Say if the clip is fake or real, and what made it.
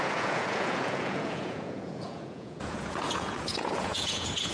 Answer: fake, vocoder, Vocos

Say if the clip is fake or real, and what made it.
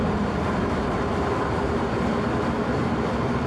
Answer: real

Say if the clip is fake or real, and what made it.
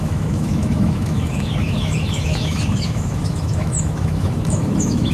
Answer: fake, autoencoder, DAC-VAE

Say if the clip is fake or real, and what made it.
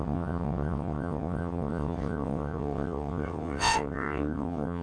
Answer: fake, vocoder, WaveNeXt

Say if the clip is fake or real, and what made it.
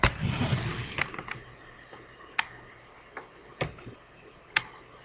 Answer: real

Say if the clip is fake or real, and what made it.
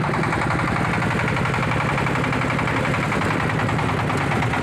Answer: real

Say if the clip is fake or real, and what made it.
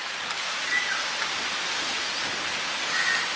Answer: real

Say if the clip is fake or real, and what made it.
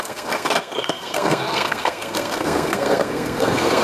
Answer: fake, codec, SNAC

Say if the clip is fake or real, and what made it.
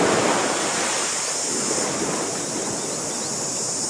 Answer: real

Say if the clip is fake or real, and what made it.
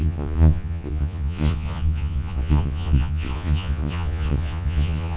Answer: fake, vocoder, Vocos